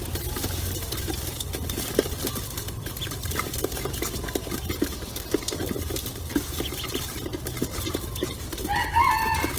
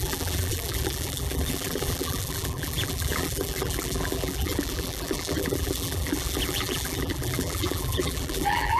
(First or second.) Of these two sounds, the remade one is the second